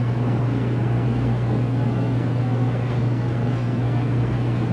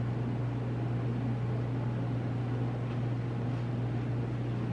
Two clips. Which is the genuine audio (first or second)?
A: second